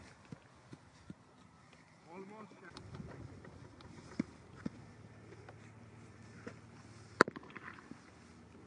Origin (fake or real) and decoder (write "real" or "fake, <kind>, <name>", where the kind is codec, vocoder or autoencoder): real